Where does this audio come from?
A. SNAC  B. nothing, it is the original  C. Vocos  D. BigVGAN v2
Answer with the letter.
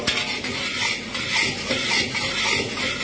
B